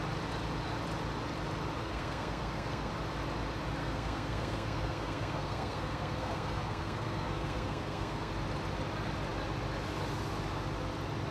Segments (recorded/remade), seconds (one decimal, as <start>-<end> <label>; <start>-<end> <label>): 0.0-1.8 recorded; 1.8-2.9 remade; 2.9-3.8 recorded; 3.8-8.3 remade; 8.3-11.3 recorded